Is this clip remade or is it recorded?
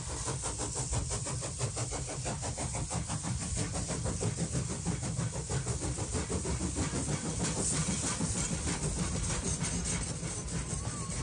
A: recorded